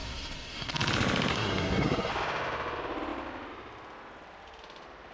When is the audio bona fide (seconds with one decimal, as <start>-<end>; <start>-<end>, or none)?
0.7-1.3; 2.1-5.1